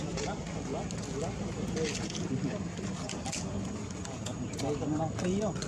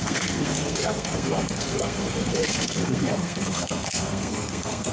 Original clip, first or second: first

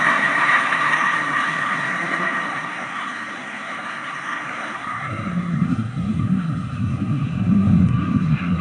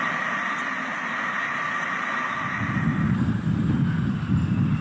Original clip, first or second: second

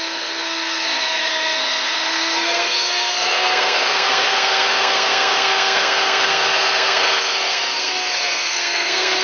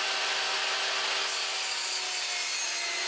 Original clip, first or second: second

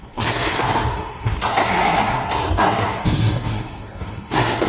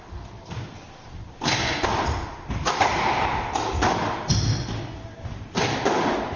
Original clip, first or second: second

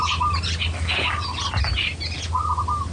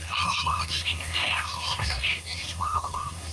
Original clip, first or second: first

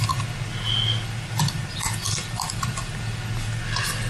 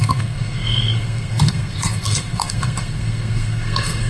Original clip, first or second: first